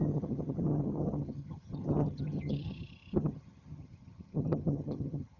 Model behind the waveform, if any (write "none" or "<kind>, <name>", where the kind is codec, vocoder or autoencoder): vocoder, HiFi-GAN